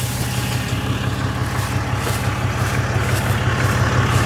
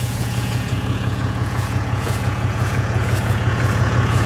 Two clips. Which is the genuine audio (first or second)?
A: first